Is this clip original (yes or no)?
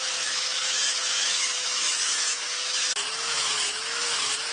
no